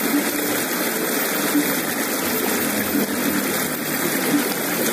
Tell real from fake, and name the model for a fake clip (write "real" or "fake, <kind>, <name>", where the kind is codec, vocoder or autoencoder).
real